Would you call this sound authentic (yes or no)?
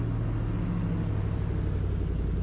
yes